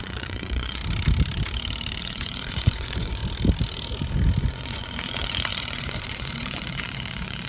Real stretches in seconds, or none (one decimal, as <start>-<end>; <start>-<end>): 0.8-2.0; 3.2-4.4